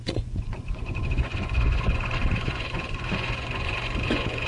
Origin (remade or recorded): remade